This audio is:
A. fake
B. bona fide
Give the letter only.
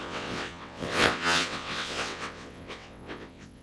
A